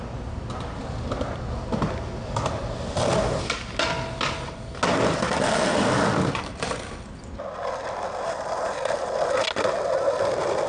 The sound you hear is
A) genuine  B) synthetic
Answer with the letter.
A